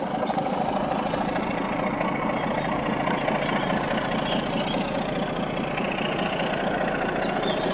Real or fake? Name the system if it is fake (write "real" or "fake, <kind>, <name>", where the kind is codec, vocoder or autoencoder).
real